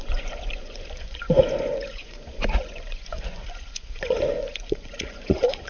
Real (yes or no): no